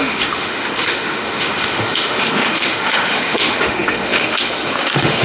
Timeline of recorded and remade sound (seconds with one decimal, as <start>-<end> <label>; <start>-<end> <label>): 0.0-5.2 remade